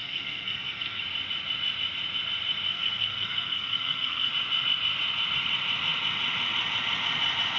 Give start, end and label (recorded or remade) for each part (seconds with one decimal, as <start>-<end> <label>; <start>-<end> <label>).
0.0-1.0 remade; 1.0-2.7 recorded; 2.7-4.3 remade; 4.3-7.6 recorded